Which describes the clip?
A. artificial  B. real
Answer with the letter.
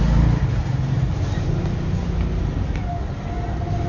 B